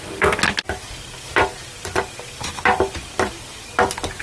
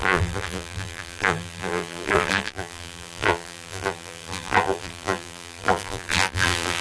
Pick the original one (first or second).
first